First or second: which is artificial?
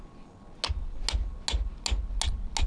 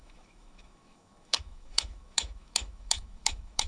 second